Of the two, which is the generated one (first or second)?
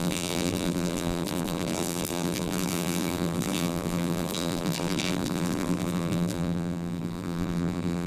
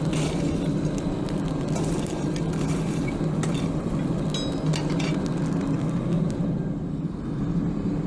first